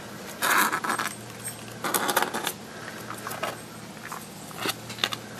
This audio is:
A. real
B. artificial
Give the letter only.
A